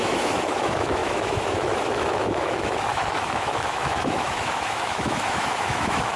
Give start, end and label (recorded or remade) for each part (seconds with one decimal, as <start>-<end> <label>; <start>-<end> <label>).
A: 0.0-6.2 remade